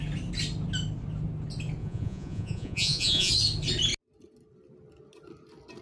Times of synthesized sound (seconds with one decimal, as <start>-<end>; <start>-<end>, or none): 1.8-3.3